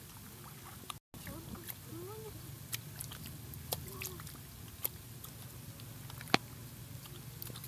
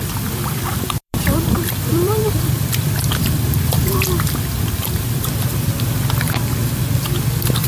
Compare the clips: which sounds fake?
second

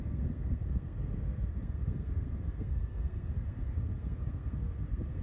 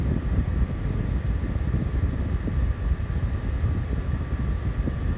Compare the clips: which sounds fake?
first